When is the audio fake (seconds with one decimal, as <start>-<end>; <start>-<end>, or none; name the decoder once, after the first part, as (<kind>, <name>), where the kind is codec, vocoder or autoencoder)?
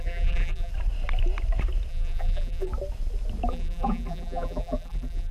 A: 0.0-0.7 (vocoder, BigVGAN v2); 1.9-2.7; 3.5-5.3